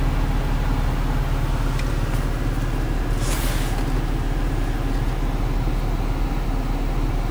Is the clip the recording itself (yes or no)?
yes